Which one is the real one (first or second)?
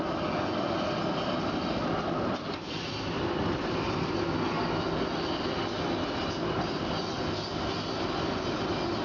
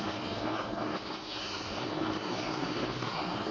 first